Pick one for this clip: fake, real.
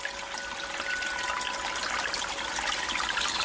real